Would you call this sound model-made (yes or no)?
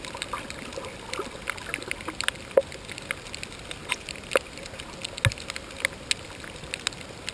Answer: no